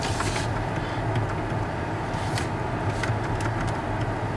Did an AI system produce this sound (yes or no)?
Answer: no